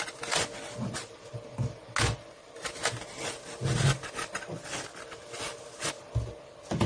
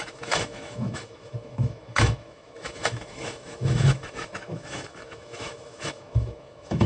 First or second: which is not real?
second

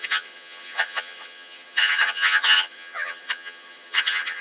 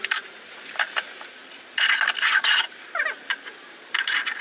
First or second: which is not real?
first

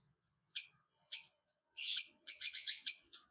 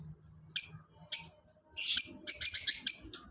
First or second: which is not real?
first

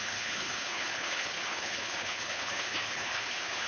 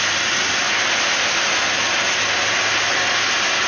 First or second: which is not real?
first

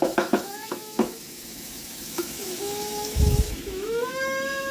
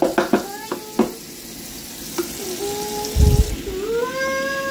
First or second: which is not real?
first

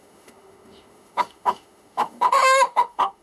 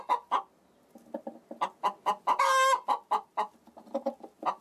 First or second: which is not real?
first